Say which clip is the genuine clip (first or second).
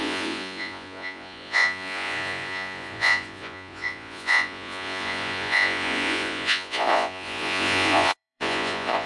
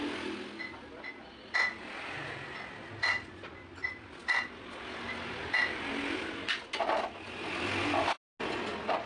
second